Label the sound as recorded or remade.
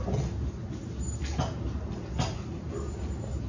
recorded